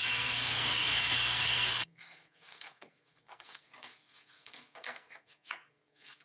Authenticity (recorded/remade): remade